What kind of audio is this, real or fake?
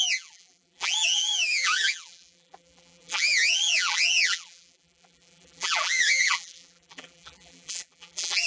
fake